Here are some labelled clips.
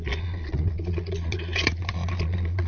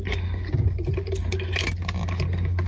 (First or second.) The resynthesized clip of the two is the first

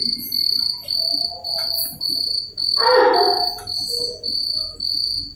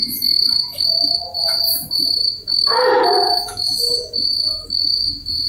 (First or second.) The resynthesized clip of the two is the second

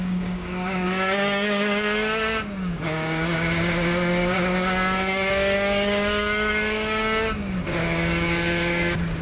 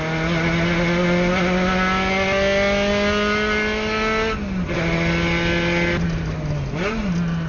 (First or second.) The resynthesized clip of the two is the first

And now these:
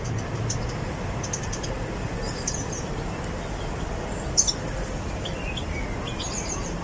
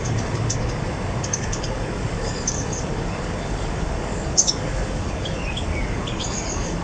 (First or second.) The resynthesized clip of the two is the second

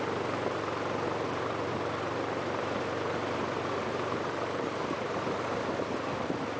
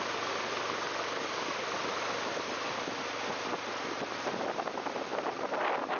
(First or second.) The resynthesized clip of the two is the first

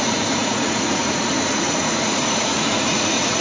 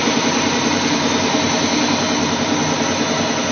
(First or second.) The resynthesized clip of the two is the first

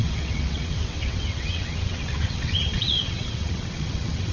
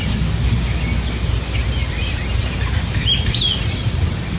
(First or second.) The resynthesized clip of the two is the first